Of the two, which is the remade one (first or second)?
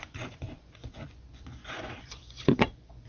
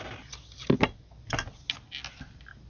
first